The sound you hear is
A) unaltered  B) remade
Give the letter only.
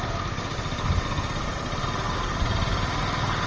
A